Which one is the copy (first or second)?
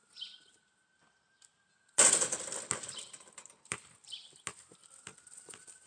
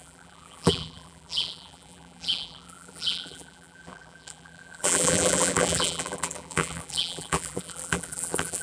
second